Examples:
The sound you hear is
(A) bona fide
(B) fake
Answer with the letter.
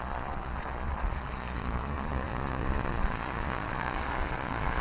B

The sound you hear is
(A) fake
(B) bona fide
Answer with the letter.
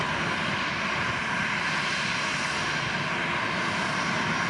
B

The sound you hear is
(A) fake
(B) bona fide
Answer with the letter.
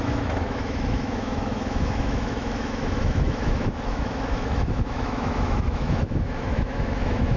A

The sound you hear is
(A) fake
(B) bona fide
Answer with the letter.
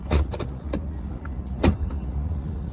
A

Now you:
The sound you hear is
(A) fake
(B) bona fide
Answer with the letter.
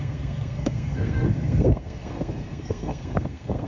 A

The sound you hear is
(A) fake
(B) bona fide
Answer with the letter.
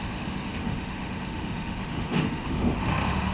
A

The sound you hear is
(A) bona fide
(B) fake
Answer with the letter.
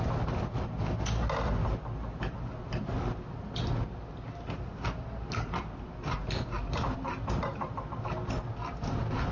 A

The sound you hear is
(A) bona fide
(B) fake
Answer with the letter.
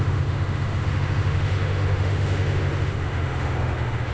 B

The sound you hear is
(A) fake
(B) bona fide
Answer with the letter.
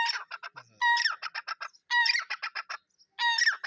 B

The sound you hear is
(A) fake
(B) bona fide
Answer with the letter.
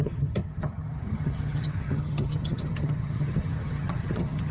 A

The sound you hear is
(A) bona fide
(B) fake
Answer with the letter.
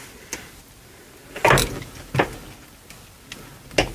A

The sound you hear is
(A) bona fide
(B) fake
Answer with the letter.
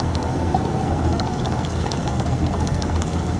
B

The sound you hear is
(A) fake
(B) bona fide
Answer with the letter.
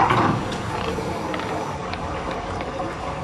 A